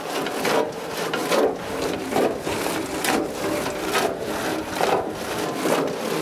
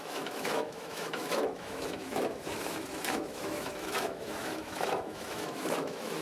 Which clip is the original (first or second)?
first